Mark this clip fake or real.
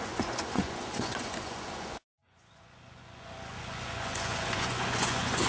fake